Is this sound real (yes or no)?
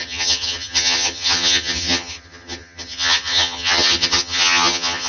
no